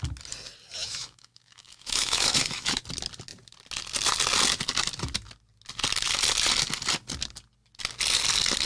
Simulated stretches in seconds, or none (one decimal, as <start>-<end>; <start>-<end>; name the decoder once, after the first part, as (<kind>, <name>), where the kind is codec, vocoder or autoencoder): 0.8-2.8 (autoencoder, DAC-VAE)